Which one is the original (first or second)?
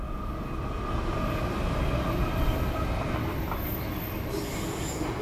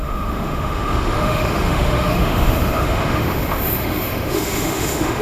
first